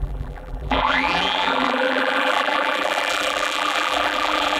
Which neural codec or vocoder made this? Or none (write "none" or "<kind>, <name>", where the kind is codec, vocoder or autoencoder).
vocoder, BigVGAN v2